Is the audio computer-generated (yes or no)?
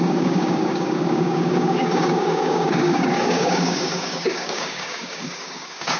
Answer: yes